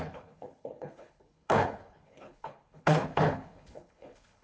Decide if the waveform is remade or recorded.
remade